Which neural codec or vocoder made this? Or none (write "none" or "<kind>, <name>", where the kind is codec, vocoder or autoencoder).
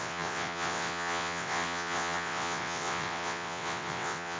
vocoder, WaveNeXt